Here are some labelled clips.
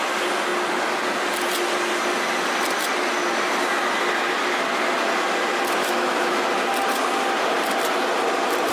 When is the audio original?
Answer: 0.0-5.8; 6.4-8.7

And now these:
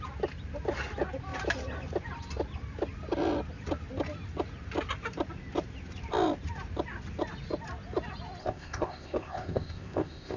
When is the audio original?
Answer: 0.0-8.4

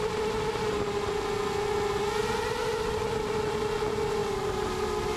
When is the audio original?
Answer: 0.0-5.2

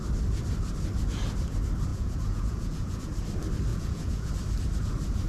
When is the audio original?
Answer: 0.0-1.9; 3.0-3.7; 4.3-5.3